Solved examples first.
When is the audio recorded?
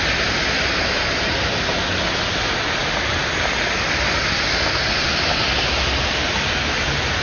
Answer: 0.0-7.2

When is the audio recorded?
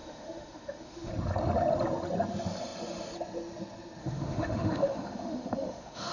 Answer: 1.1-4.0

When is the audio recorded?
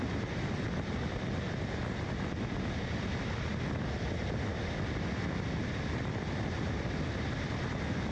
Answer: 0.0-8.1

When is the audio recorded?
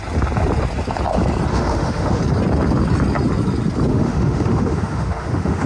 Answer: 0.0-1.5; 2.2-3.9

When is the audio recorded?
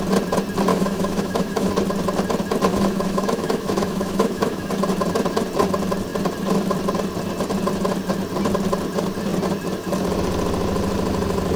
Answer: 0.0-0.7; 1.7-2.7; 4.7-11.6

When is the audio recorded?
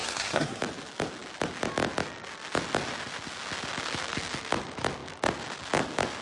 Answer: 0.6-6.2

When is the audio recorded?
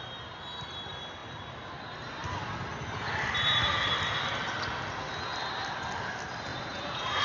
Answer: 0.0-6.5